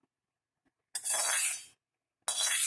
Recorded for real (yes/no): yes